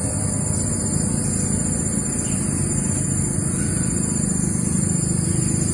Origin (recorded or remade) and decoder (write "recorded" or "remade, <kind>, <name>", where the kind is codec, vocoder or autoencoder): recorded